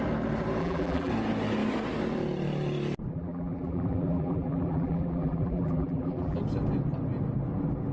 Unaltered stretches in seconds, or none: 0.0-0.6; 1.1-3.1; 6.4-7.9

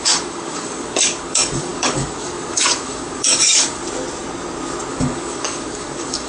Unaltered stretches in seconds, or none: 3.8-4.9

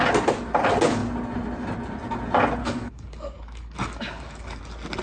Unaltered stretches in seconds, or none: 0.0-2.6; 4.6-5.0

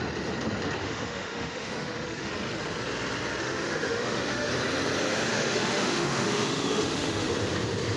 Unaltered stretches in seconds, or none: 0.0-0.8; 2.3-3.4; 4.5-5.3; 7.3-8.0

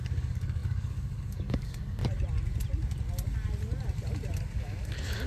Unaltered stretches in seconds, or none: 2.0-4.4

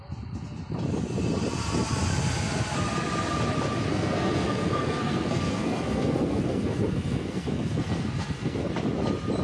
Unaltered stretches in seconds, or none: 0.0-3.9; 8.7-9.4

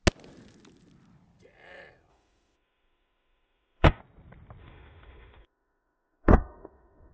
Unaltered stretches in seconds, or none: 0.0-2.1; 4.0-4.6

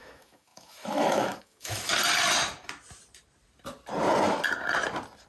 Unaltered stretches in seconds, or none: 1.9-5.3